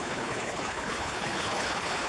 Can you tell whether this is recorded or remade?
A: remade